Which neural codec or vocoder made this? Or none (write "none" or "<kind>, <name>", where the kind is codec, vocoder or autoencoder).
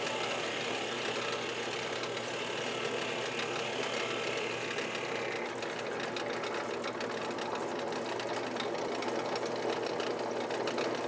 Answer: none